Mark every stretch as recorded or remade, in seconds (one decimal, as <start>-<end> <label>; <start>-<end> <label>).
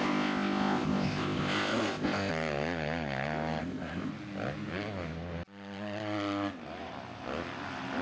0.0-2.3 remade; 2.3-3.6 recorded; 3.6-4.1 remade; 4.1-8.0 recorded